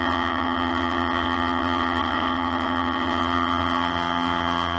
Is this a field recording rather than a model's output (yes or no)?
no